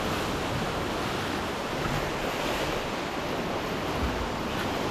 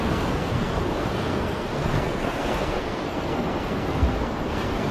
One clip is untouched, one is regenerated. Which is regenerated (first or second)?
second